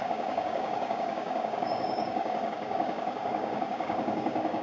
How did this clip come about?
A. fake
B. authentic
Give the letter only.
A